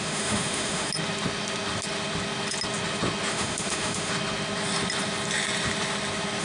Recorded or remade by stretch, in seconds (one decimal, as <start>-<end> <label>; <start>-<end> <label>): 0.0-0.9 remade; 0.9-3.3 recorded; 3.3-4.1 remade; 4.1-6.4 recorded